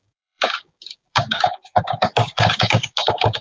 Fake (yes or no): yes